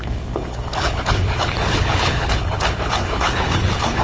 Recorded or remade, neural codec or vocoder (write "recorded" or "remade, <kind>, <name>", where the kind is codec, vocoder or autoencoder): remade, codec, HILCodec